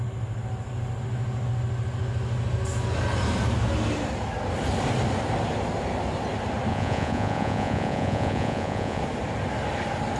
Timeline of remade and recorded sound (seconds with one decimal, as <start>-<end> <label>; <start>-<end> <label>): 0.0-6.7 recorded; 6.7-9.0 remade; 9.0-10.2 recorded